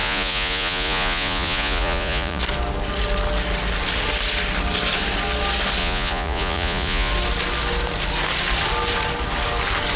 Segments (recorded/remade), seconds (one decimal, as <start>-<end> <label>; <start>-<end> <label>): 0.0-2.4 remade; 2.4-5.8 recorded; 5.8-7.1 remade; 7.1-10.0 recorded